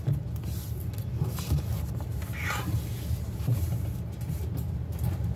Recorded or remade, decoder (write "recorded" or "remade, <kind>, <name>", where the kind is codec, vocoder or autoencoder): recorded